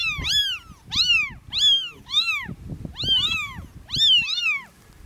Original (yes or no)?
yes